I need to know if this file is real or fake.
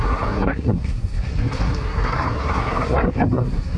fake